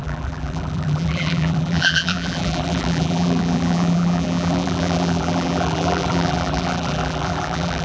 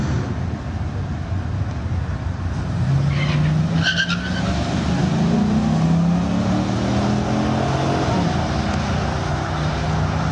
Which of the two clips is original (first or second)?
second